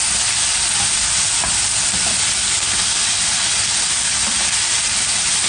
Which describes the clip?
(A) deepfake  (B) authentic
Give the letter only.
B